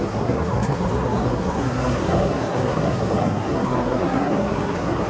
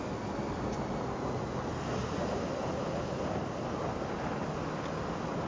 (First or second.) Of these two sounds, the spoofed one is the first